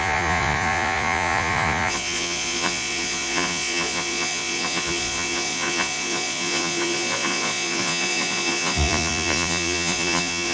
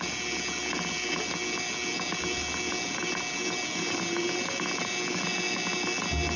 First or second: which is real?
second